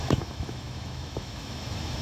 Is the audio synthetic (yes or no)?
yes